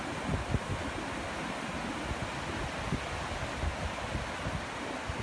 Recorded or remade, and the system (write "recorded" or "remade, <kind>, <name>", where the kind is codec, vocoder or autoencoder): recorded